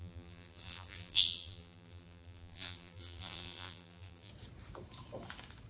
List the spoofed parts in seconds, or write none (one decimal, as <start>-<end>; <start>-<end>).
0.0-4.3